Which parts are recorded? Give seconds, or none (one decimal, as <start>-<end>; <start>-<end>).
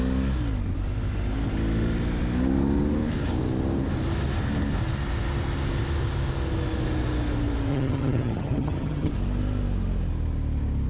0.0-7.7; 9.1-10.9